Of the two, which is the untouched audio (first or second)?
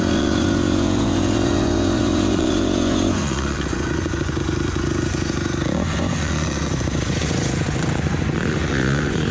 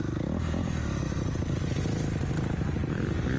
second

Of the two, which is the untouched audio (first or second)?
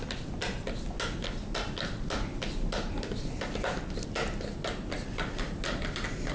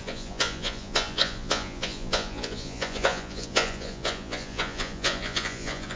first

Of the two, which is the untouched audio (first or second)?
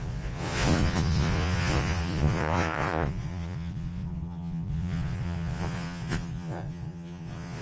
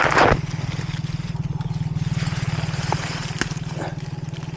second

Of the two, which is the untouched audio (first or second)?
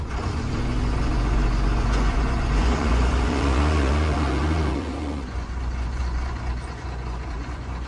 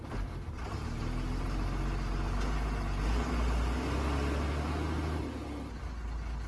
second